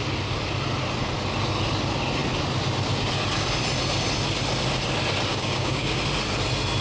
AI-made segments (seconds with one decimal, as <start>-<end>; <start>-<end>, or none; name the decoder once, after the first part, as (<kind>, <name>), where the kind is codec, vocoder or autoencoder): 5.3-6.0 (codec, DAC)